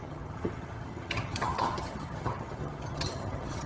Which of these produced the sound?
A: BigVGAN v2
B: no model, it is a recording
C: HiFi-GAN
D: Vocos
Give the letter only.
C